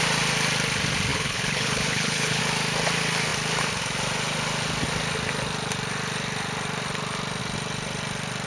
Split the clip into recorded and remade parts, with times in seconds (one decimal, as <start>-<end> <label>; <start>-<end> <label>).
0.0-1.1 recorded; 1.1-2.4 remade; 2.4-8.5 recorded